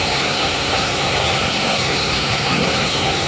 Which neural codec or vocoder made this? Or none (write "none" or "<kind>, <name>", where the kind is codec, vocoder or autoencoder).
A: codec, SNAC